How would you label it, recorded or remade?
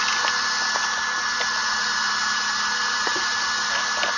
recorded